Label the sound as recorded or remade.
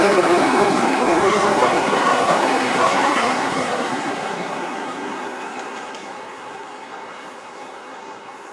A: remade